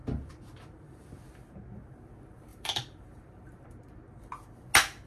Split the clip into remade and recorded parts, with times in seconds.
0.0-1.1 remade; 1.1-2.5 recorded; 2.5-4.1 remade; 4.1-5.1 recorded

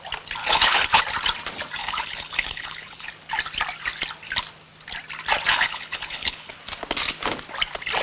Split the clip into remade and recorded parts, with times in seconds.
0.0-0.4 recorded; 0.4-1.0 remade; 1.0-1.8 recorded; 1.8-3.1 remade; 3.1-5.5 recorded; 5.5-6.5 remade; 6.5-8.0 recorded

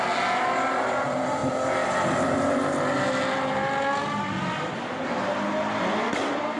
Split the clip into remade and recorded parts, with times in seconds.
0.0-6.6 recorded

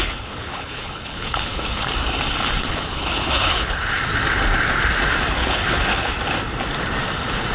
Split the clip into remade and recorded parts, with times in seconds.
0.0-1.9 remade; 1.9-2.7 recorded; 2.7-3.9 remade; 3.9-5.4 recorded; 5.4-6.1 remade; 6.1-7.5 recorded

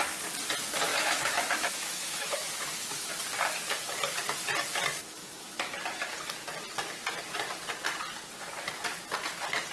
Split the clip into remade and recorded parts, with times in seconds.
0.0-0.9 recorded; 0.9-3.1 remade; 3.1-5.0 recorded; 5.0-5.7 remade; 5.7-9.7 recorded